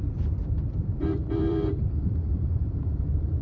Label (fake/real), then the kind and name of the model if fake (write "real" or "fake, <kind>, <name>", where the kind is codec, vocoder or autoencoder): fake, vocoder, BigVGAN v2